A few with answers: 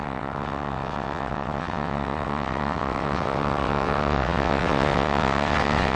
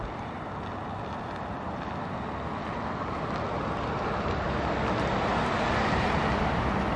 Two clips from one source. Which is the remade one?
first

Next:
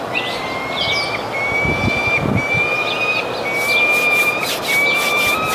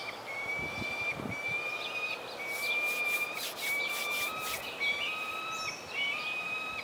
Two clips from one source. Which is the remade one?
second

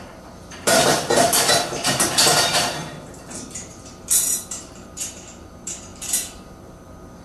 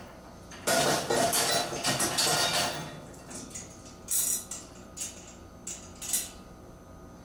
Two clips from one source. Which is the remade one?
first